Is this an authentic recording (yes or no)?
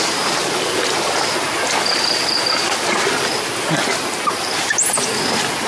yes